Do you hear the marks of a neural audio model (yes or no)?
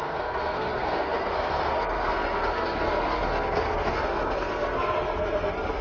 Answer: yes